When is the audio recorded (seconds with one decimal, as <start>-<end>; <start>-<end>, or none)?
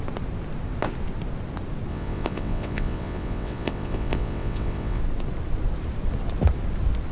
0.0-1.9; 5.0-7.1